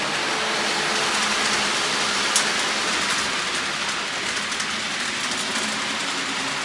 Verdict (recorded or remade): recorded